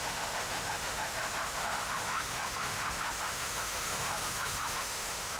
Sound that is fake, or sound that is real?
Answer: fake